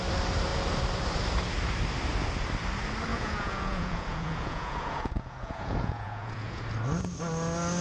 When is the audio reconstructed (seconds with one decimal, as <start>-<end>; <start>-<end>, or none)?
3.1-6.6